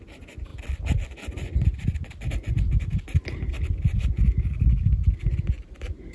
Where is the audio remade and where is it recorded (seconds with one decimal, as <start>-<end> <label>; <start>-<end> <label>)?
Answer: 0.0-6.1 recorded